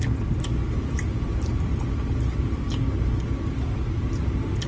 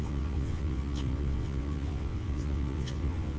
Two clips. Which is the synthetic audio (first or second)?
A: second